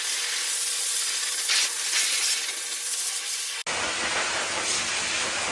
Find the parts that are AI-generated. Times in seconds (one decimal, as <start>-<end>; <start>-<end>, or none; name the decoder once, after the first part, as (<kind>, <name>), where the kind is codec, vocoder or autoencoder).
none

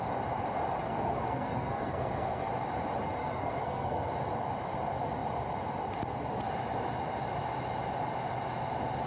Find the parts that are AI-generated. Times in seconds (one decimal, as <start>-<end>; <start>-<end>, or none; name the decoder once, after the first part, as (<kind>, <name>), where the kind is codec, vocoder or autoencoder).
0.8-2.5 (codec, SNAC); 3.2-4.1

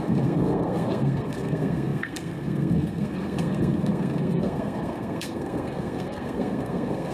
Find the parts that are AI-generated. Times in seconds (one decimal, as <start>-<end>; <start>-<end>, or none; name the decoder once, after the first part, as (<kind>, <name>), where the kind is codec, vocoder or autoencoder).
0.0-7.1 (codec, SNAC)

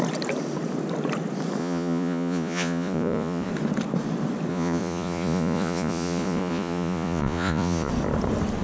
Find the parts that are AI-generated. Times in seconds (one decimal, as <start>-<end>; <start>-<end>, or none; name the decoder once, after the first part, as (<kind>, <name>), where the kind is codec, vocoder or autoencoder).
1.6-3.5 (vocoder, Vocos); 4.5-7.9

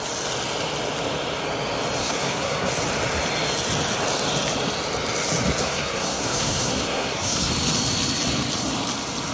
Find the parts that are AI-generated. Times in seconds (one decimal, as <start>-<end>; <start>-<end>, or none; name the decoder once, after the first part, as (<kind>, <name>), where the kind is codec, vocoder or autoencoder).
2.0-2.7 (codec, SNAC); 5.6-7.5

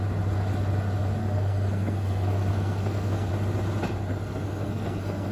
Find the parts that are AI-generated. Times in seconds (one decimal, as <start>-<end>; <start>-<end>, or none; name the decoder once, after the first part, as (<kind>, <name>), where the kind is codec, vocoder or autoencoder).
1.2-3.3 (codec, SNAC); 4.1-5.3

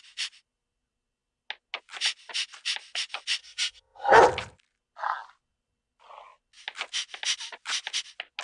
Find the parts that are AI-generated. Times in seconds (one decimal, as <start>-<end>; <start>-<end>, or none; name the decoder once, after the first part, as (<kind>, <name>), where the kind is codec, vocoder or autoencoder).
3.4-4.2 (codec, SNAC)